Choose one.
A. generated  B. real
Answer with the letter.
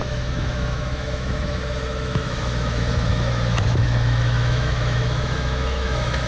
A